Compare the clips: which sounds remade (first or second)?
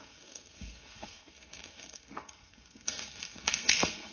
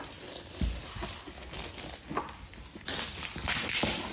first